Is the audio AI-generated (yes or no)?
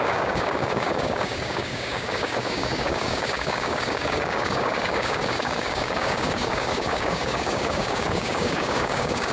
yes